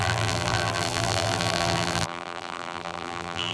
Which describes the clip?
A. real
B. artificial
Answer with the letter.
B